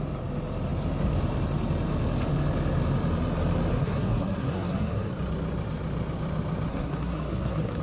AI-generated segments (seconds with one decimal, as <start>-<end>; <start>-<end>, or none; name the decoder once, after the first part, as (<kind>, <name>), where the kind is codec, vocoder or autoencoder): 3.7-5.1 (codec, SNAC); 6.7-7.8